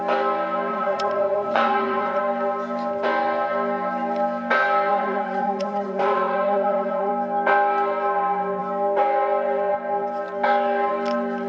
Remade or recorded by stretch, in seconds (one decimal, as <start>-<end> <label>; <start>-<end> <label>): 0.0-0.7 recorded; 0.7-2.2 remade; 2.2-4.9 recorded; 4.9-7.1 remade; 7.1-11.5 recorded